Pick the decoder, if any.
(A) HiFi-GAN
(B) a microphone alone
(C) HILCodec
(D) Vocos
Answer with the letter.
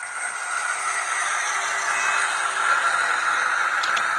B